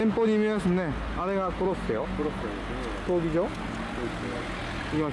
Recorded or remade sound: recorded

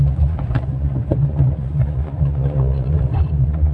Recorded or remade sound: remade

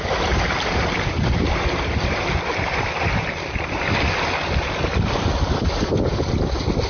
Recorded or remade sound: recorded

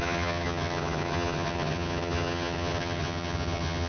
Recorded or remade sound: remade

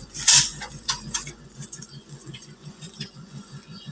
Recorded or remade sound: remade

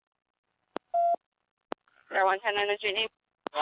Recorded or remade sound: recorded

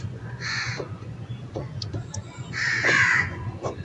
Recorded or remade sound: remade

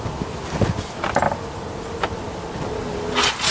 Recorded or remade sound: recorded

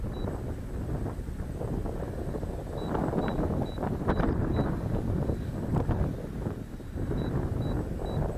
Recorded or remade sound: recorded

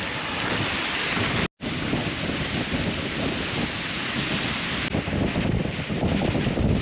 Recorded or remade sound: recorded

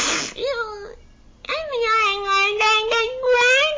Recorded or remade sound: recorded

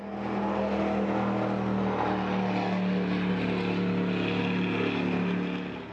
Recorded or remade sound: recorded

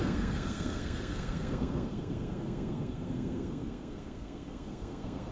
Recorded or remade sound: remade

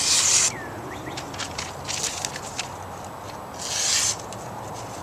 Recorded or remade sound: recorded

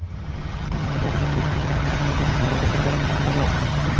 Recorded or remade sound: remade